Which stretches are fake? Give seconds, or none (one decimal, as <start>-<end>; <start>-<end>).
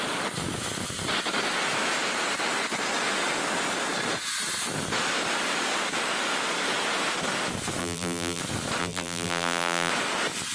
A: 7.8-8.4; 8.8-9.9